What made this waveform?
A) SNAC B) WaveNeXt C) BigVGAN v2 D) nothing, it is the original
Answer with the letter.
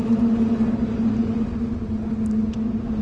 D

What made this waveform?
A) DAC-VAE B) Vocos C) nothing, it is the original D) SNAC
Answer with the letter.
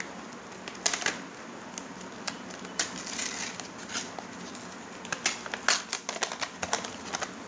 C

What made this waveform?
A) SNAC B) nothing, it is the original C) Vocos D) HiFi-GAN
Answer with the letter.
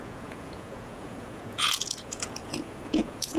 C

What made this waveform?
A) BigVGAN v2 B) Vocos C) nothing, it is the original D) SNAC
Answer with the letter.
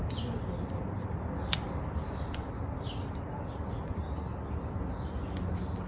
C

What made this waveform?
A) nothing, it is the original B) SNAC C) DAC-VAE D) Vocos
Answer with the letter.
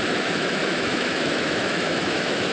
C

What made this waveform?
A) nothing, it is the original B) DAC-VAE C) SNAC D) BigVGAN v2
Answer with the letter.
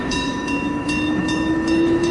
B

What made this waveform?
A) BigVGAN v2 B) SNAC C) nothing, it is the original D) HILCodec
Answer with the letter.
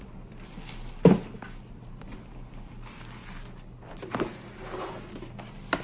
C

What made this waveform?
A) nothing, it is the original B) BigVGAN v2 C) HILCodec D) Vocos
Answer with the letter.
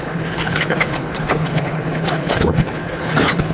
C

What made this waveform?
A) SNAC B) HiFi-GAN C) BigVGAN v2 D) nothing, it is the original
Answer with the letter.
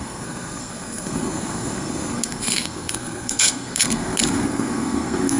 A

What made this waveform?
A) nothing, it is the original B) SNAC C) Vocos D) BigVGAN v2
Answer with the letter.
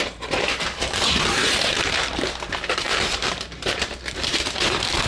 D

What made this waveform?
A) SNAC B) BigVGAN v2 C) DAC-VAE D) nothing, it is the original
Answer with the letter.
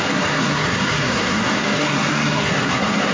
A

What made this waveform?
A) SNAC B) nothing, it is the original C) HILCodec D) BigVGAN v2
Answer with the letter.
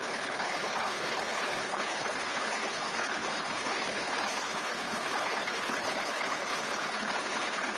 C